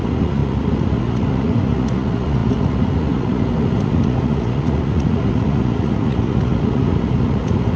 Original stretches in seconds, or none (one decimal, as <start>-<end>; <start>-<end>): none